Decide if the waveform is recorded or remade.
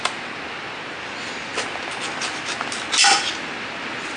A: recorded